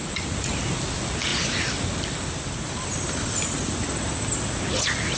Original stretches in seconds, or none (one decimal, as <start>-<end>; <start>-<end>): 0.6-5.2